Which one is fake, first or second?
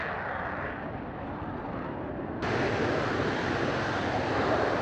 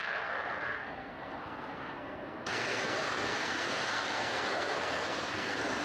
second